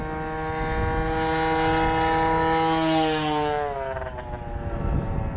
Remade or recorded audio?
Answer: recorded